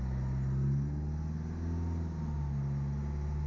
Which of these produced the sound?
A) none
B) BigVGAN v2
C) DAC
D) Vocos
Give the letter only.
A